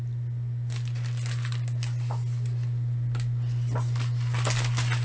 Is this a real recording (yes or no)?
yes